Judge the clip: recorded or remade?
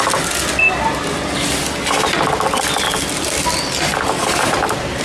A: recorded